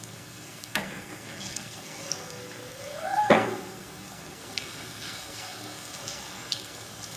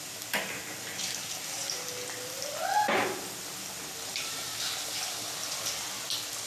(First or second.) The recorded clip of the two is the second